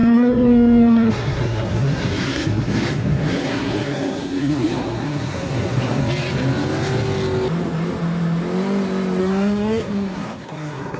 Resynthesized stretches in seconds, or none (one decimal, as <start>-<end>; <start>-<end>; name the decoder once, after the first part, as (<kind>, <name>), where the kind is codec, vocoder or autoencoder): 0.0-6.0 (codec, SNAC); 9.2-11.0